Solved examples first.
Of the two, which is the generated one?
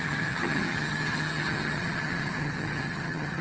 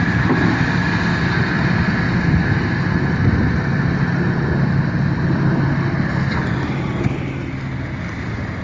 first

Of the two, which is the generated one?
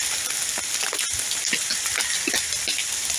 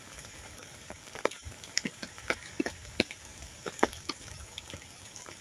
second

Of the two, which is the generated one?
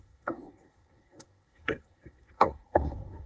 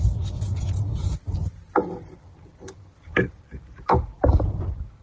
first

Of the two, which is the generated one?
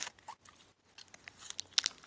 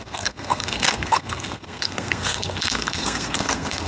second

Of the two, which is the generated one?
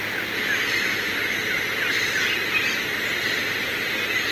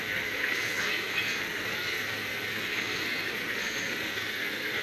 second